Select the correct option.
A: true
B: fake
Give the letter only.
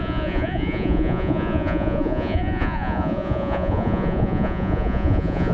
B